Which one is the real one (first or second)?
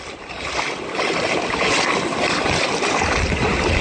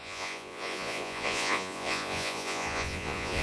first